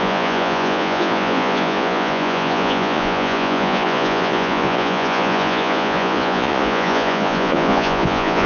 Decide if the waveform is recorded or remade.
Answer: remade